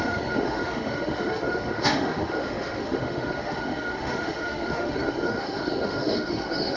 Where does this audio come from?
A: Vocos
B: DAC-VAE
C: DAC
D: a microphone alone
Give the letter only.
B